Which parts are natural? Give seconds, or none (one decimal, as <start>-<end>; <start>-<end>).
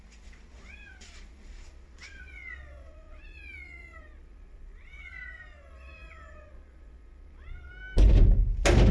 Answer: 7.7-8.9